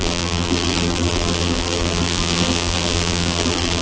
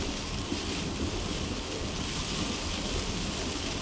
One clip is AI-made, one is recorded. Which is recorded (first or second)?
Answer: second